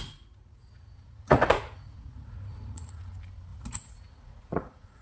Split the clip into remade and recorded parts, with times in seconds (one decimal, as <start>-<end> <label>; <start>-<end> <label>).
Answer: 0.0-3.0 remade; 3.0-3.5 recorded; 3.5-5.0 remade